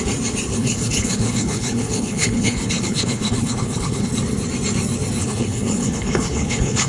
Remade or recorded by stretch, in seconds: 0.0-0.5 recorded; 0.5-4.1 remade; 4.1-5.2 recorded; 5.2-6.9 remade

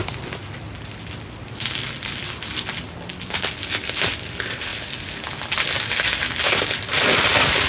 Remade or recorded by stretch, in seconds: 0.0-7.7 recorded